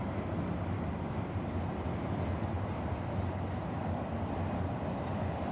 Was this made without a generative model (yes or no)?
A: yes